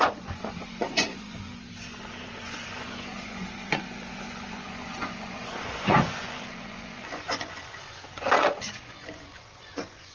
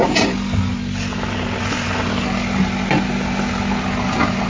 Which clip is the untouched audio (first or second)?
second